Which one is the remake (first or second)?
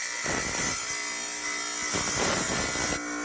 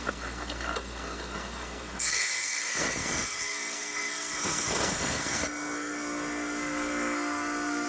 second